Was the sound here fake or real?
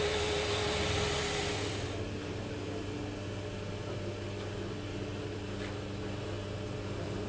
real